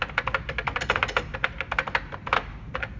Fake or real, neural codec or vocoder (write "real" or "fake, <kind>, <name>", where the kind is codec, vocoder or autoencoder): real